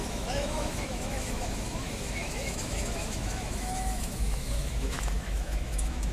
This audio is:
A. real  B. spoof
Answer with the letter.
B